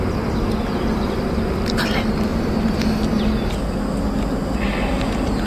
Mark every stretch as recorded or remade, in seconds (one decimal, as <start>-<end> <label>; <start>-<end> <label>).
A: 0.0-2.3 recorded; 2.3-3.2 remade; 3.2-5.5 recorded